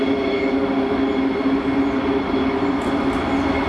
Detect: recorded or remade recorded